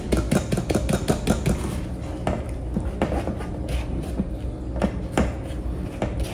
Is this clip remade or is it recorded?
recorded